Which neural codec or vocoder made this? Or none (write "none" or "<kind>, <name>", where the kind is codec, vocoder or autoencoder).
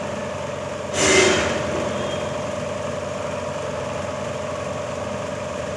vocoder, BigVGAN v2